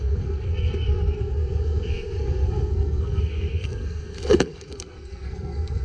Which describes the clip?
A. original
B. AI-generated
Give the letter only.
B